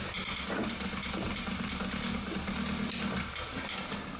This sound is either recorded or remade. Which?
recorded